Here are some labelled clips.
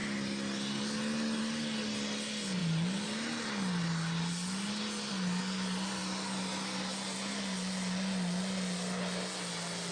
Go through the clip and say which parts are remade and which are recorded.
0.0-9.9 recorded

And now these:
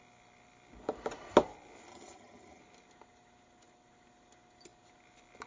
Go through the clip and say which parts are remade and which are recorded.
0.0-1.9 recorded; 1.9-2.6 remade; 2.6-5.5 recorded

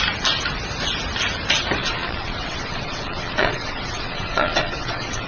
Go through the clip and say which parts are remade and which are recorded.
0.0-1.8 recorded; 1.8-5.3 remade

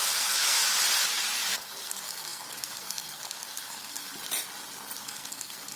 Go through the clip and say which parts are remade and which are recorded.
0.0-0.6 remade; 0.6-1.5 recorded; 1.5-4.1 remade; 4.1-5.0 recorded; 5.0-5.8 remade